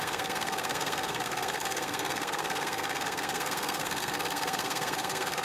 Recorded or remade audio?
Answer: remade